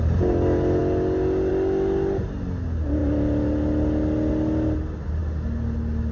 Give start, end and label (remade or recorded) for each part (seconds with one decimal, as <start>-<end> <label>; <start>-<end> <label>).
0.0-6.1 recorded